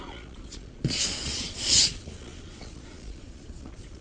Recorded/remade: remade